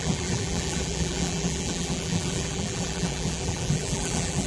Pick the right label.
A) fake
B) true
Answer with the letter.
A